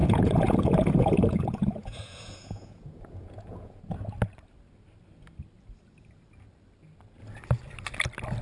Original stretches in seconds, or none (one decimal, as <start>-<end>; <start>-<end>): 3.8-8.4